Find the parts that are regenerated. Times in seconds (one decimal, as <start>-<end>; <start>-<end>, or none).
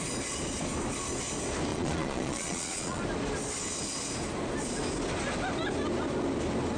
1.7-3.0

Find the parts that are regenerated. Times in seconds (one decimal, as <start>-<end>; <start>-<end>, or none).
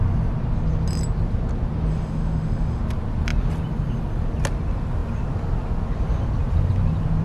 1.9-2.8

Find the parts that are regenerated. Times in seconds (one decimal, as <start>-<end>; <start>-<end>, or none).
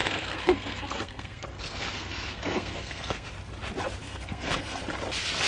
0.0-3.3; 4.0-4.8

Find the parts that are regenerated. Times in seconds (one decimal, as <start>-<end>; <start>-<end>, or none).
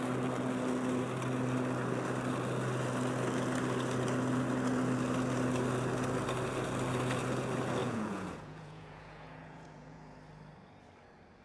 7.8-10.1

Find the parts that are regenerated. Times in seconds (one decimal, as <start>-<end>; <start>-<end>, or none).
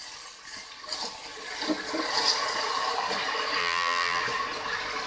3.6-4.2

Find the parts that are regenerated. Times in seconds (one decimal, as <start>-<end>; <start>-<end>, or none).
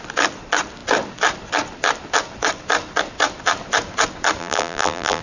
4.4-5.2